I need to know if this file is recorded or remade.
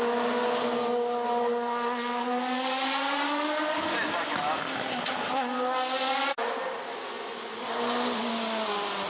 recorded